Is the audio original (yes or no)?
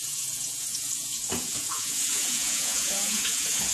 no